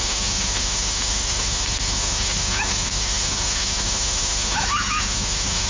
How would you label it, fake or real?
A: fake